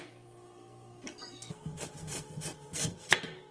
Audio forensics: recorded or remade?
remade